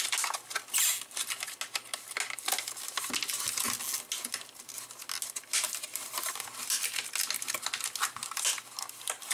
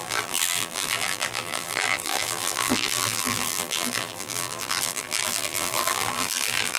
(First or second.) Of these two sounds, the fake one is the second